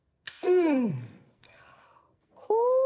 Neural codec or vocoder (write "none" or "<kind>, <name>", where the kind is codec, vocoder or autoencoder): codec, SNAC